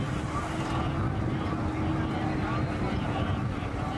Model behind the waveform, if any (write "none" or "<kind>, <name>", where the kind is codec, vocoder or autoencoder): none